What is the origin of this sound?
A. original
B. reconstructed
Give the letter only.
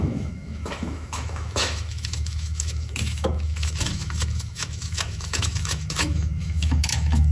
B